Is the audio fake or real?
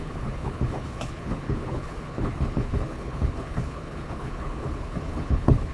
fake